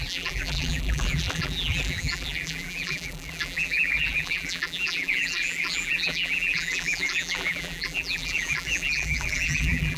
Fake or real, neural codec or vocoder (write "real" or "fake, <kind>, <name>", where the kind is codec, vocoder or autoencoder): fake, vocoder, BigVGAN v2